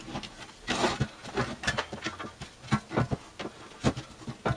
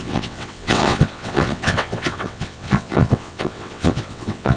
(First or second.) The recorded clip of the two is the first